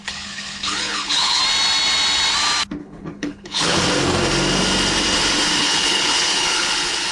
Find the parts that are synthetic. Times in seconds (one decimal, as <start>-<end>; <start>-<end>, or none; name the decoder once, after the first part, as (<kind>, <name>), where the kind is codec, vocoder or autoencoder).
0.0-1.4 (codec, HILCodec); 2.8-3.8; 5.6-7.1